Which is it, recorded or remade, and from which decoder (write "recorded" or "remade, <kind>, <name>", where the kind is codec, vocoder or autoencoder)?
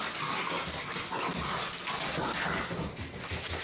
recorded